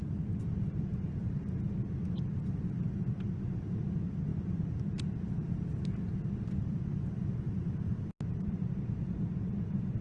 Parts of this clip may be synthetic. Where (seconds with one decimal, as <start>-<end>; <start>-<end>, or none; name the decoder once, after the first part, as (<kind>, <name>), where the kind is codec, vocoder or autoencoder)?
none